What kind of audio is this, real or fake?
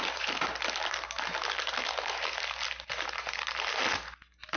real